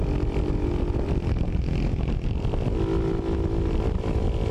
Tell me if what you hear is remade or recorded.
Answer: recorded